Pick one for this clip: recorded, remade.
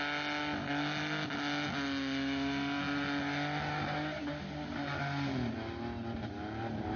recorded